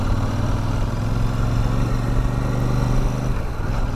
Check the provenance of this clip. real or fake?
real